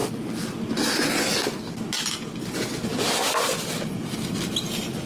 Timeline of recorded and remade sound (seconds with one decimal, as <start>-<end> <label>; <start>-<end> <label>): 0.0-2.9 recorded; 2.9-5.1 remade